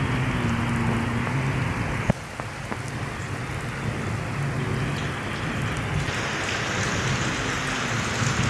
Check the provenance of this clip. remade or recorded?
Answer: recorded